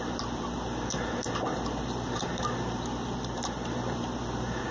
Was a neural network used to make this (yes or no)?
yes